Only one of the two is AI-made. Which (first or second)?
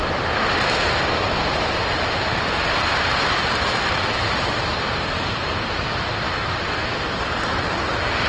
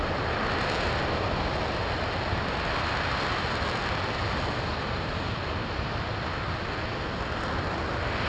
first